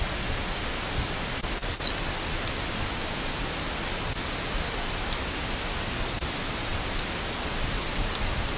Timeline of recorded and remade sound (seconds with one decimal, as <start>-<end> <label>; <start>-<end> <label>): 0.0-8.6 recorded